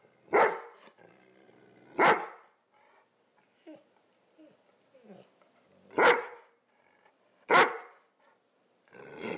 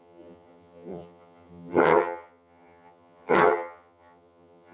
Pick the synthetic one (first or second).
second